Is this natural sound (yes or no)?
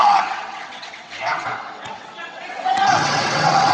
no